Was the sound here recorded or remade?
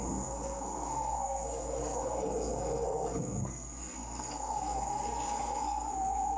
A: remade